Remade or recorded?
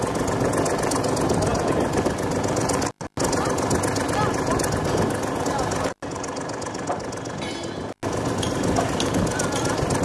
recorded